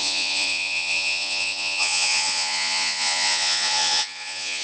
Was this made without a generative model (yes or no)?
no